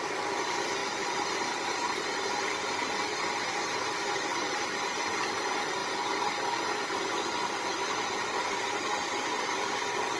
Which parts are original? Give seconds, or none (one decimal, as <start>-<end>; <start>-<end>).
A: 2.1-2.6; 5.8-8.5